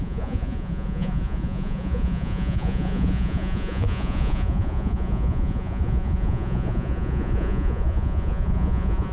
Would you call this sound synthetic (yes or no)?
yes